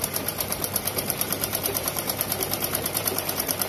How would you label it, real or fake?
fake